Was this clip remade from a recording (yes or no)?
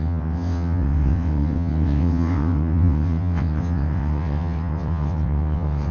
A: yes